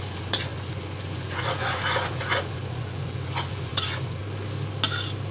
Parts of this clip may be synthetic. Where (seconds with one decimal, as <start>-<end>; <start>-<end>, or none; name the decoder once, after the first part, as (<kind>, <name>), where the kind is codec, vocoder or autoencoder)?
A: 0.0-4.2 (vocoder, Vocos)